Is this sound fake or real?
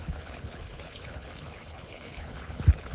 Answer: fake